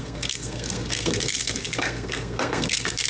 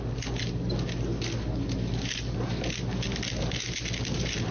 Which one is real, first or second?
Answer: second